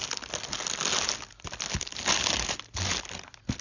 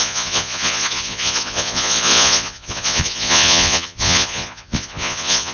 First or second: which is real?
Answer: first